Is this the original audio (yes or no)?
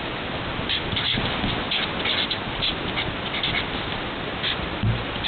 yes